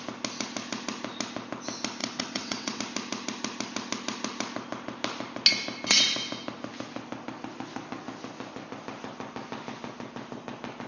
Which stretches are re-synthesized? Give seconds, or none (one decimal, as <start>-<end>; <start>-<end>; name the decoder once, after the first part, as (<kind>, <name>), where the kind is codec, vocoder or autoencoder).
2.0-2.8 (vocoder, WaveNeXt)